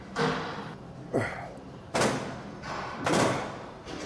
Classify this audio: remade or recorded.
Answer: recorded